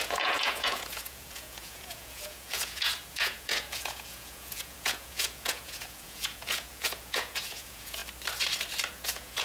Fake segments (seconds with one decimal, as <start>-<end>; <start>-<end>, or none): 0.0-8.0; 8.9-9.4